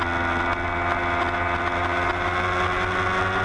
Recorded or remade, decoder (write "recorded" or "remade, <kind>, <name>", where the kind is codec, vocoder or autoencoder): recorded